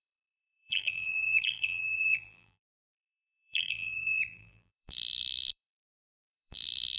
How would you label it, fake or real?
fake